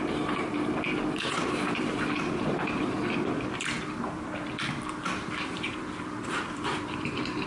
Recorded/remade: remade